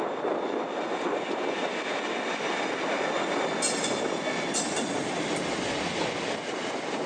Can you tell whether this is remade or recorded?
recorded